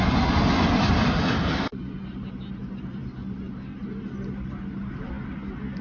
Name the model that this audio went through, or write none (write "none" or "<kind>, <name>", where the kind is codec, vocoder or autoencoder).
none